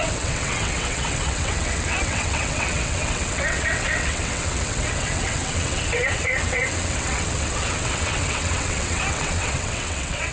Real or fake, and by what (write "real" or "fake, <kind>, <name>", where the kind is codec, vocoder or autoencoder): fake, vocoder, WaveNeXt